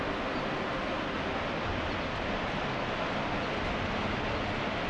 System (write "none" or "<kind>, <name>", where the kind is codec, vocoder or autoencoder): none